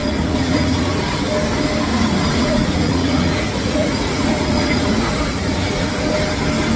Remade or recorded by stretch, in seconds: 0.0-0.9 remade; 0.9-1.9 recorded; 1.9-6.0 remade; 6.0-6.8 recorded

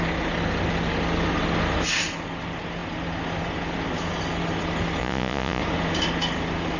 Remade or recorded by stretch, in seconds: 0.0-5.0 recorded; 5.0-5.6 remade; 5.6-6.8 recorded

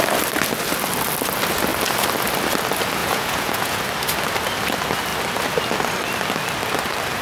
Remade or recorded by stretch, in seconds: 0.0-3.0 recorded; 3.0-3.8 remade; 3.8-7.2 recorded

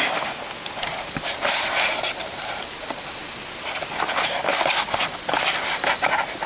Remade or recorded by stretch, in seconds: 0.0-6.5 recorded